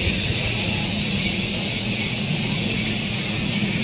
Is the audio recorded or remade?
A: remade